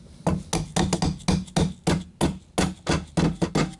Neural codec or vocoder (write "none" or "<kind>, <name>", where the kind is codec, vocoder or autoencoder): none